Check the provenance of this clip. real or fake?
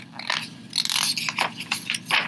real